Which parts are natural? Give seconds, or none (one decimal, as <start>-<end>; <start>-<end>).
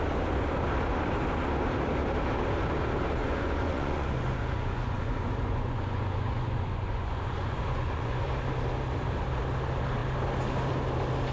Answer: 0.0-3.2; 8.2-11.3